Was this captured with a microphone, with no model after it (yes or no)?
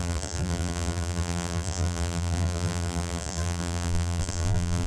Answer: no